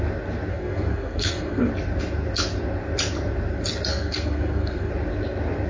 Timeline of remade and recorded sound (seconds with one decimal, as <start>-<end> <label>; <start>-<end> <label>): 0.0-0.5 recorded; 0.5-1.7 remade; 1.7-3.9 recorded; 3.9-4.9 remade; 4.9-5.7 recorded